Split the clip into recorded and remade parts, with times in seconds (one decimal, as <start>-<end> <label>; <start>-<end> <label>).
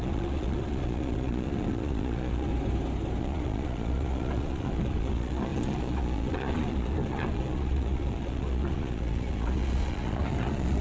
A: 0.0-2.5 remade; 2.5-3.2 recorded; 3.2-10.8 remade